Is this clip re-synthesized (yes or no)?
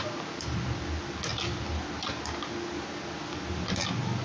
no